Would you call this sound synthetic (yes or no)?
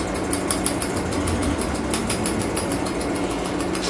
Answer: no